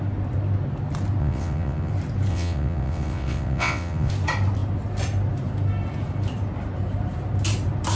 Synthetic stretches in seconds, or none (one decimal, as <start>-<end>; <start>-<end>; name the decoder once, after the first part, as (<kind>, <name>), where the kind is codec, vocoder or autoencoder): 1.2-1.9 (vocoder, WaveNeXt); 2.3-4.1